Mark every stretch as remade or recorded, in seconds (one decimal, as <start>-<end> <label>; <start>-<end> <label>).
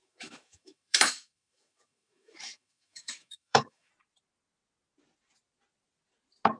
0.0-3.9 remade; 3.9-6.6 recorded